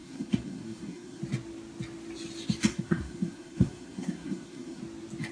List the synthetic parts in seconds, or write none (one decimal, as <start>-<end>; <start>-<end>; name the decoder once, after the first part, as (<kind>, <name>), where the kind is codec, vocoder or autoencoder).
0.0-1.2 (codec, SNAC); 2.7-4.8